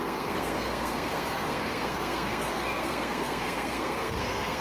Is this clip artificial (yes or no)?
yes